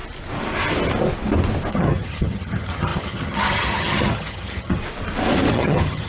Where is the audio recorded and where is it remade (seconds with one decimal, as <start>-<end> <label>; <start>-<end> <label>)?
0.0-1.7 recorded; 1.7-4.8 remade; 4.8-5.5 recorded; 5.5-6.1 remade